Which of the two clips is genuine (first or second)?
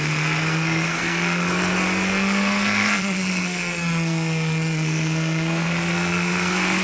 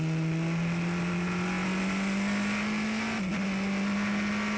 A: second